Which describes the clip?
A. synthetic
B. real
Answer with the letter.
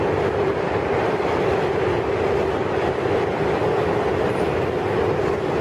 B